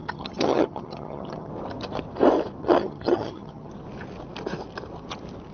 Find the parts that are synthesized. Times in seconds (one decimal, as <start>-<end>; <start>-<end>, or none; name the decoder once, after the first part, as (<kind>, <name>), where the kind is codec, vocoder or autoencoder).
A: 0.0-1.5 (vocoder, HiFi-GAN); 2.6-3.7